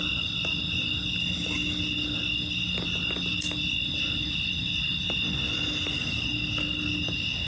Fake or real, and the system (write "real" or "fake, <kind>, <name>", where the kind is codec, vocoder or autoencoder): real